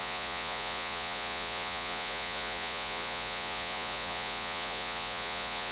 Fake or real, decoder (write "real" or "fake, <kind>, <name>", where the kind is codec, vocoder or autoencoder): fake, vocoder, Vocos